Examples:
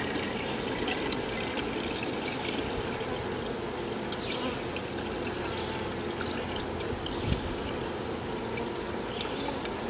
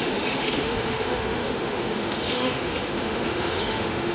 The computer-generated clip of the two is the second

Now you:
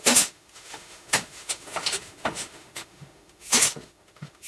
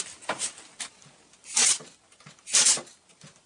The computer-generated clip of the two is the first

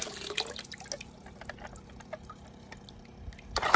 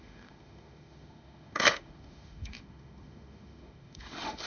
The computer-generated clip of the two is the second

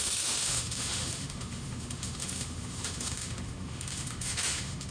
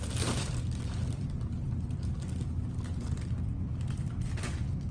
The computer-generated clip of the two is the first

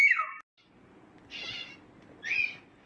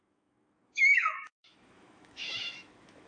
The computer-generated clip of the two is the second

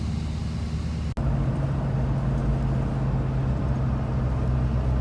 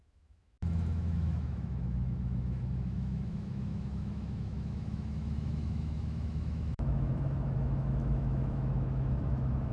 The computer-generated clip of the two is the second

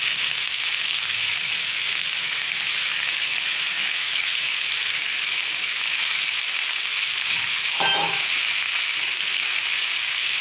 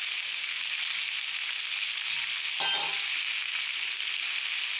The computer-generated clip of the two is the first